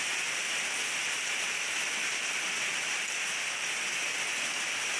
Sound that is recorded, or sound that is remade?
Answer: recorded